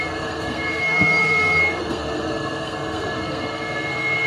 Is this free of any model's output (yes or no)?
no